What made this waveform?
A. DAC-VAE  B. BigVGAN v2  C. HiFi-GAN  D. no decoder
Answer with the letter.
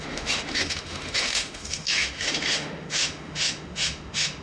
A